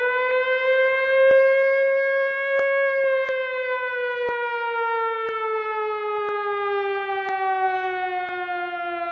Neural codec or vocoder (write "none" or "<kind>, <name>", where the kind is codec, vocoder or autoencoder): none